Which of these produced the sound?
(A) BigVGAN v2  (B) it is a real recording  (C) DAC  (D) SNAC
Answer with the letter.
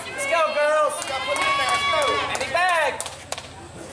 B